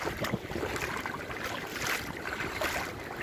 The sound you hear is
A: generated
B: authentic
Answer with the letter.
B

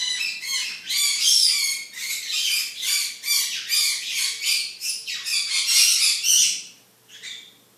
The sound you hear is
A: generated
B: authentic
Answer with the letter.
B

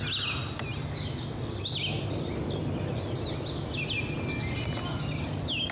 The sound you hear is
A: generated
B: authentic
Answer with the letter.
B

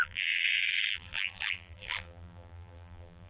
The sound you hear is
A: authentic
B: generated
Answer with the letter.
B